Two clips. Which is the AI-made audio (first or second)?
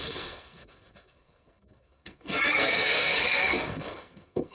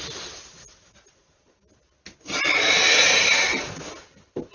first